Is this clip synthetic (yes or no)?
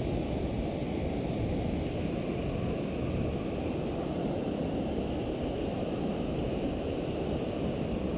no